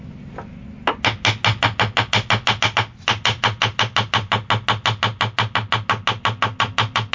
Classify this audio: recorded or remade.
recorded